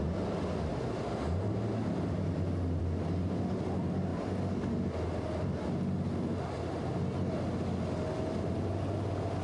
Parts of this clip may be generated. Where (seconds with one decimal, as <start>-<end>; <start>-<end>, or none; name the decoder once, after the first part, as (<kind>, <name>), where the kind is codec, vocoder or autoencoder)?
none